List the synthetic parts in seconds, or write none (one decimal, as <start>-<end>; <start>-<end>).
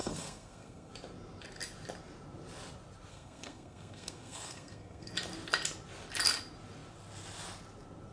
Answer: 0.0-0.9; 3.1-5.1